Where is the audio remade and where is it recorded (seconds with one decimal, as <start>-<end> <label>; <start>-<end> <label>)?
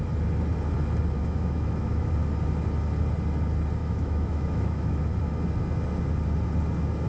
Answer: 0.0-1.2 recorded; 1.2-2.1 remade; 2.1-3.8 recorded; 3.8-5.3 remade; 5.3-7.1 recorded